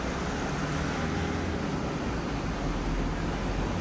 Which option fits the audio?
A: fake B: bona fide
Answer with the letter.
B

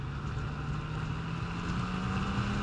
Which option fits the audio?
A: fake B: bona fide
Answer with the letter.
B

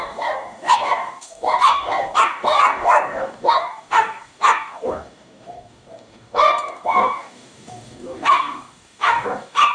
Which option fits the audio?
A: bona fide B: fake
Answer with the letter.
B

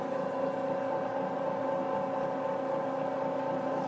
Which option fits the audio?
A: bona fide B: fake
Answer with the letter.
A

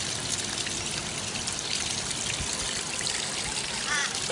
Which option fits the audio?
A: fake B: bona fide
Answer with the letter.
B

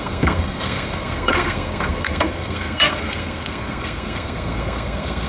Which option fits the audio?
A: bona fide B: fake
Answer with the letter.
B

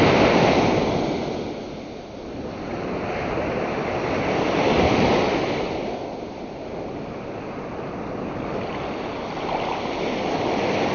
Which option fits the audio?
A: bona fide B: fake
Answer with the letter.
A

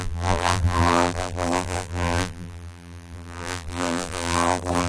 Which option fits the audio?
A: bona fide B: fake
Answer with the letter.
B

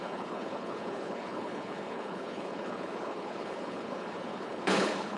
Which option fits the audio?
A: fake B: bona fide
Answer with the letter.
A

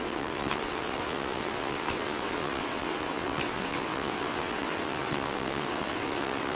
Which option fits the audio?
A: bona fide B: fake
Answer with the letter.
B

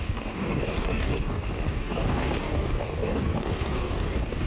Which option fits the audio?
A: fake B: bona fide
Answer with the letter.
A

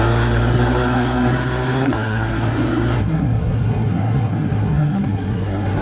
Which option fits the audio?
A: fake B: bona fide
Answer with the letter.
A